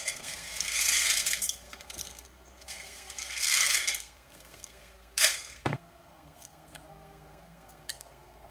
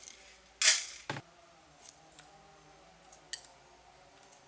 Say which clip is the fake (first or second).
first